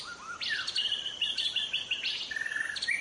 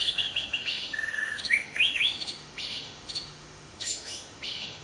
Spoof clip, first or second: second